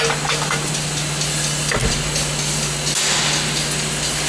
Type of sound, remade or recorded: recorded